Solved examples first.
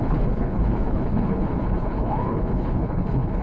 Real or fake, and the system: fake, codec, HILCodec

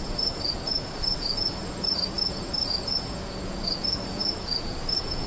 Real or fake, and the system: fake, vocoder, Vocos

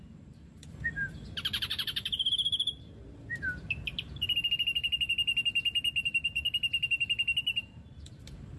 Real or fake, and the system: fake, vocoder, BigVGAN v2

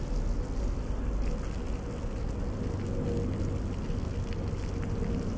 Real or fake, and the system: real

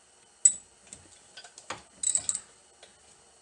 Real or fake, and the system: real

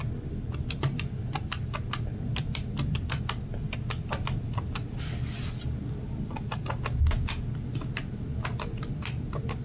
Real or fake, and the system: real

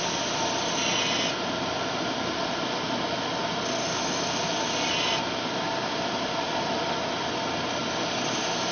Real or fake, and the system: real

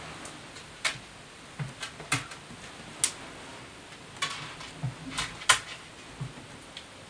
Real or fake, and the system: real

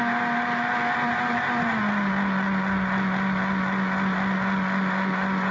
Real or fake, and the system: real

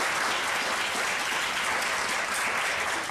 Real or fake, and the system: real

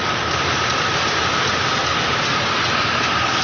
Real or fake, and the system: real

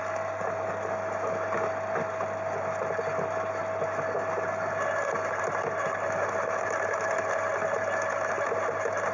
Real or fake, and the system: real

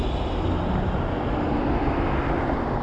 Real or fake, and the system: real